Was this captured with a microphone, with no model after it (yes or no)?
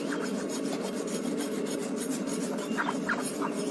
yes